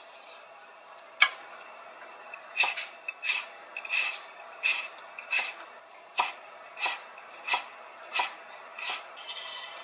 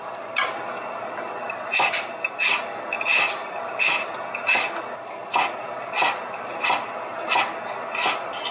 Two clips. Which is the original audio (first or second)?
second